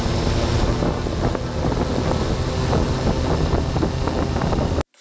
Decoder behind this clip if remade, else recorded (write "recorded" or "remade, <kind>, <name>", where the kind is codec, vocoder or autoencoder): recorded